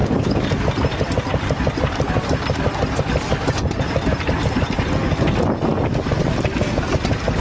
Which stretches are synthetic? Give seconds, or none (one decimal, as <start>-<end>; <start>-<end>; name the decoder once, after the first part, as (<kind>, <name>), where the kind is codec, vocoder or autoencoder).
none